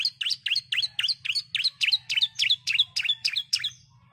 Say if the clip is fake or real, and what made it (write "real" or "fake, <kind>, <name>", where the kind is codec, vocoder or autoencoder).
real